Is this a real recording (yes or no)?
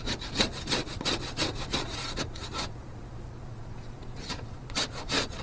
no